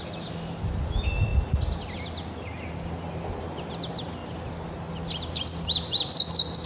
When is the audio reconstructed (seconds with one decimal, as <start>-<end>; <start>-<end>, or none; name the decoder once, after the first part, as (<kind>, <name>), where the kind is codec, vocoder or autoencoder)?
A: none